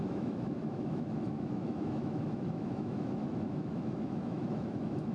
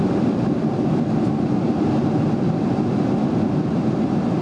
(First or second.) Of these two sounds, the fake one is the first